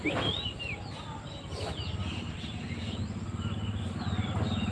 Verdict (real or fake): real